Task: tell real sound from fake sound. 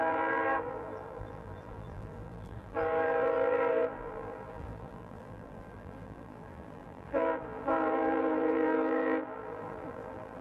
fake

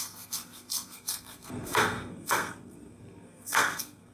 fake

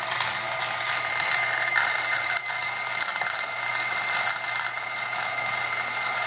real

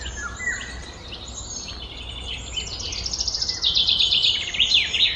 real